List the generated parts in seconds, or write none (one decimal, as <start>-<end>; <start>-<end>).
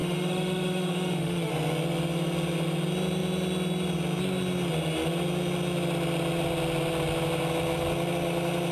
0.0-1.5